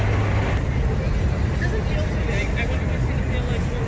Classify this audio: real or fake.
real